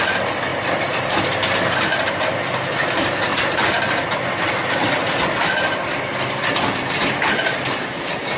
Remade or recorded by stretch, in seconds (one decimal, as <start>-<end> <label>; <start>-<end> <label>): 0.0-0.5 recorded; 0.5-2.3 remade; 2.3-3.3 recorded; 3.3-8.4 remade

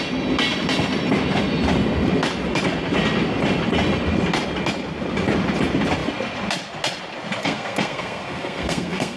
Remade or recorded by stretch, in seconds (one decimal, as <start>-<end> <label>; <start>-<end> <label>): 0.0-7.4 recorded; 7.4-9.2 remade

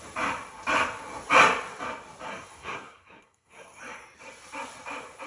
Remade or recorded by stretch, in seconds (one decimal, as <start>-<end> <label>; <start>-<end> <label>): 0.0-2.3 recorded; 2.3-3.8 remade; 3.8-5.3 recorded

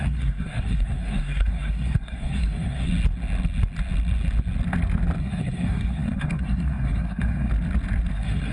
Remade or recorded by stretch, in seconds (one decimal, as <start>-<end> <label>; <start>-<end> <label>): 0.0-2.9 remade; 2.9-5.2 recorded; 5.2-7.5 remade; 7.5-8.1 recorded; 8.1-8.5 remade

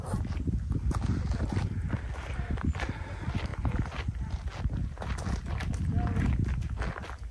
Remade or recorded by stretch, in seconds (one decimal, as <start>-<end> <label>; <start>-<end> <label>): 0.0-7.3 recorded